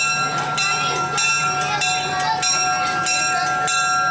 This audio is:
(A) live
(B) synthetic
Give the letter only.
A